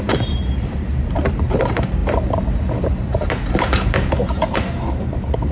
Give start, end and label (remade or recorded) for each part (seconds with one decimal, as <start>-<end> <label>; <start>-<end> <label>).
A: 0.0-5.5 remade

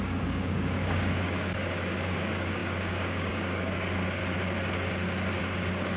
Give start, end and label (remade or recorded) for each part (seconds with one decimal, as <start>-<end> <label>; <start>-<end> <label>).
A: 0.0-4.2 remade; 4.2-5.4 recorded; 5.4-6.0 remade

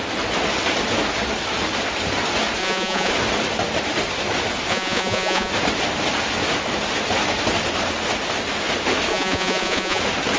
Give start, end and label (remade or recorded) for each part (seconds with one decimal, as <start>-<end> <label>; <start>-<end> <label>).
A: 0.0-2.6 recorded; 2.6-3.1 remade; 3.1-4.7 recorded; 4.7-5.5 remade; 5.5-9.1 recorded; 9.1-10.0 remade; 10.0-10.4 recorded

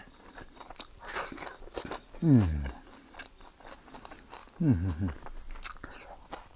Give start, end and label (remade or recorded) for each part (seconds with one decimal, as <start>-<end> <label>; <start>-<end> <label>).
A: 0.0-6.6 recorded

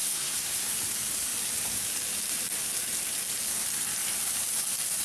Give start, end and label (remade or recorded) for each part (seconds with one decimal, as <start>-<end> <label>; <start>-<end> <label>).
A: 0.0-0.7 remade; 0.7-5.0 recorded